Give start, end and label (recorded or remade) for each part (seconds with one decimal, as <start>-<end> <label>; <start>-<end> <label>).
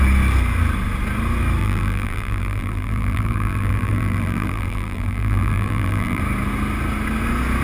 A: 0.0-1.6 recorded; 1.6-6.2 remade; 6.2-7.6 recorded